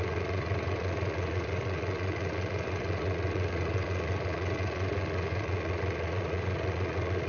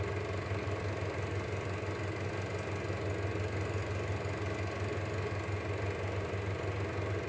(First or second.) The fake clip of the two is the first